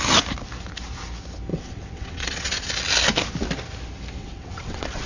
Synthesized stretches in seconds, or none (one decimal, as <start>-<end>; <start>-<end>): 1.5-2.7; 4.2-5.1